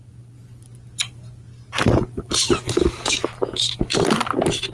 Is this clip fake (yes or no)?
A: no